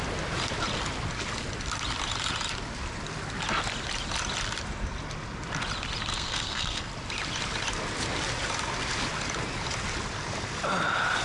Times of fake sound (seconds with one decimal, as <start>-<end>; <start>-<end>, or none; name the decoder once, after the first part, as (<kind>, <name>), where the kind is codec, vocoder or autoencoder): 6.1-6.9 (codec, SNAC)